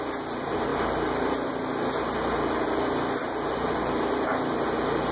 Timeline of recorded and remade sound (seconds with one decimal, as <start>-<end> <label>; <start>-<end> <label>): 0.0-0.7 recorded; 0.7-1.5 remade; 1.5-3.2 recorded; 3.2-4.3 remade; 4.3-5.1 recorded